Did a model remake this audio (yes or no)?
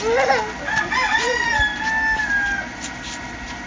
no